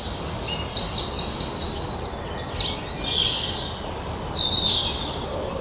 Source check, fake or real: real